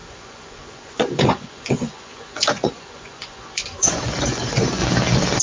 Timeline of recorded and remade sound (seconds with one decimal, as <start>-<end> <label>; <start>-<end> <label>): 0.0-4.8 remade; 4.8-5.4 recorded